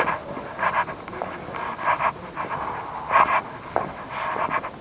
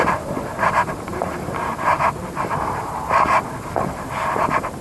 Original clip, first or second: first